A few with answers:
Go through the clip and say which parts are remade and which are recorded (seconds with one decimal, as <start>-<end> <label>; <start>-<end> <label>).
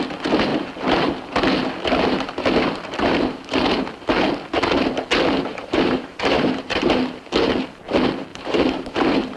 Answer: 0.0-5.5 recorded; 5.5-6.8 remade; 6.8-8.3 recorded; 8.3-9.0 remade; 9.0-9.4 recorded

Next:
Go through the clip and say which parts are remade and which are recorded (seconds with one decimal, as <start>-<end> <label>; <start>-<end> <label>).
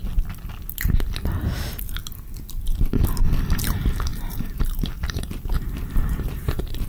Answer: 0.0-1.4 recorded; 1.4-2.0 remade; 2.0-3.6 recorded; 3.6-6.9 remade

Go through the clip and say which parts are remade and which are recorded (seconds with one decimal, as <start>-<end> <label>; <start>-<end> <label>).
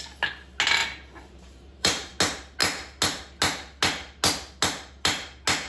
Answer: 0.0-0.8 recorded; 0.8-2.2 remade; 2.2-5.7 recorded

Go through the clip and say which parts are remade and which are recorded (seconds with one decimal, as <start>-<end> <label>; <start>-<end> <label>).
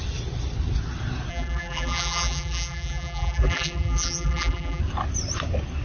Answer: 0.0-1.3 recorded; 1.3-4.8 remade; 4.8-5.8 recorded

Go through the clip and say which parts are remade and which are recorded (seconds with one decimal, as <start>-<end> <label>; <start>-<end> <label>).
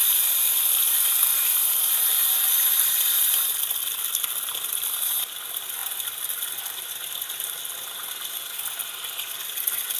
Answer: 0.0-0.6 remade; 0.6-10.0 recorded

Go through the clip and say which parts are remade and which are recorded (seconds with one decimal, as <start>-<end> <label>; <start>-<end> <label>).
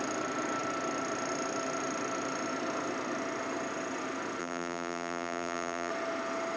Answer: 0.0-4.4 recorded; 4.4-5.9 remade; 5.9-6.6 recorded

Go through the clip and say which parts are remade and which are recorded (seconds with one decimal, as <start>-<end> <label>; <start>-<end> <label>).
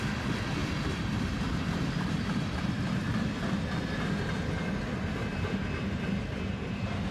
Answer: 0.0-0.6 recorded; 0.6-2.9 remade; 2.9-7.1 recorded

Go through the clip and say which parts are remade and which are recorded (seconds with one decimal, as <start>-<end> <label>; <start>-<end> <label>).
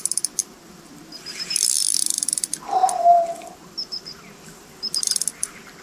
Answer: 0.0-0.4 recorded; 0.4-2.3 remade; 2.3-2.8 recorded; 2.8-5.8 remade